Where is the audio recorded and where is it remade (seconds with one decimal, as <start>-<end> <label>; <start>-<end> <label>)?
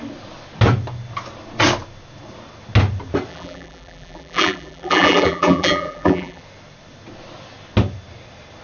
0.0-3.3 recorded; 3.3-6.4 remade; 6.4-8.6 recorded